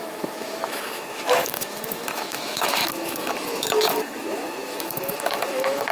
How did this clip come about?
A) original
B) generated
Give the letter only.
B